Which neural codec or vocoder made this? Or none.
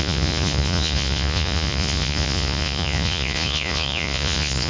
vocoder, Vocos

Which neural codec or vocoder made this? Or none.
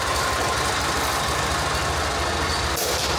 none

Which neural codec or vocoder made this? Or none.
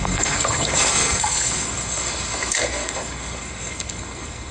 codec, SNAC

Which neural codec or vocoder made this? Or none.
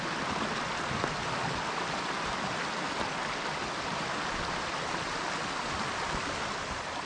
none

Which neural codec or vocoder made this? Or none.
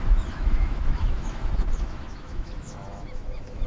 autoencoder, DAC-VAE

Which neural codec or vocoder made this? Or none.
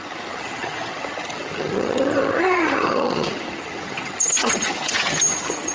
vocoder, HiFi-GAN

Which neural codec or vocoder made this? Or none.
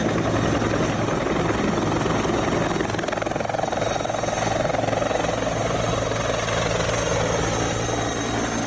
none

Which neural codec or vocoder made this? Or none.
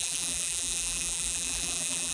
vocoder, BigVGAN v2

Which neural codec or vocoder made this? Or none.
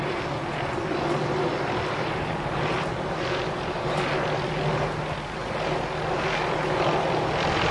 none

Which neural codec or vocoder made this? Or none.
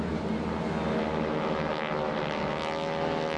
none